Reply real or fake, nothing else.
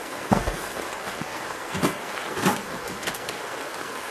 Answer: fake